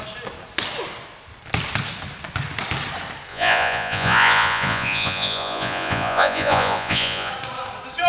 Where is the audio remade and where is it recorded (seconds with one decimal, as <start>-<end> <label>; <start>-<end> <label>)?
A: 0.0-3.3 recorded; 3.3-7.3 remade; 7.3-8.1 recorded